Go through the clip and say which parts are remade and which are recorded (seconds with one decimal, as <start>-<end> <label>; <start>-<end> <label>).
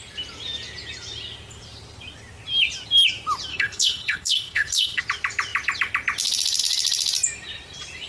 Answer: 0.0-3.5 recorded; 3.5-5.0 remade; 5.0-8.1 recorded